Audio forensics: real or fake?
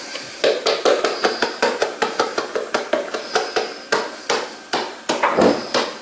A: real